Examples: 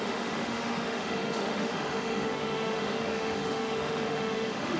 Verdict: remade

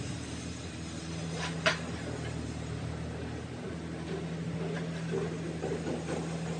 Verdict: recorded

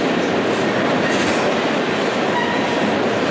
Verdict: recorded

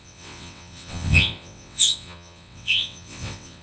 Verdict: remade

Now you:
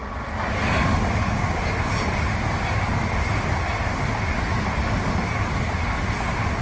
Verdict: recorded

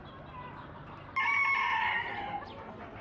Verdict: recorded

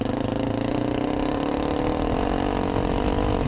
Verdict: recorded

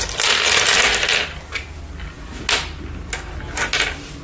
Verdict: recorded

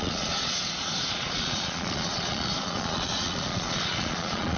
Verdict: remade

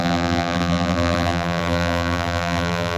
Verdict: remade